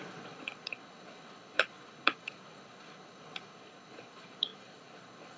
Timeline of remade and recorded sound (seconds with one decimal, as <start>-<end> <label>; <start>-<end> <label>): 0.0-5.4 remade